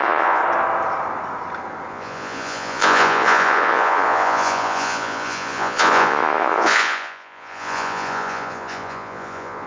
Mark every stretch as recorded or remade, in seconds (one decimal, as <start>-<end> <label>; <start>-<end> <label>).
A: 0.0-0.4 remade; 0.4-1.9 recorded; 1.9-9.7 remade